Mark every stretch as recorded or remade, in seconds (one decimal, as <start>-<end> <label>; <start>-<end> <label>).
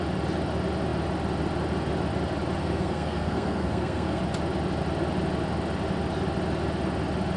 0.0-2.6 recorded; 2.6-4.2 remade; 4.2-7.4 recorded